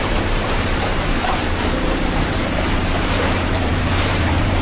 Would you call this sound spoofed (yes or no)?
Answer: yes